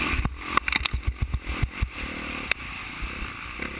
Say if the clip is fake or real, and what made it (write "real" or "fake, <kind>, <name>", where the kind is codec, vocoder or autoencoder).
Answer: real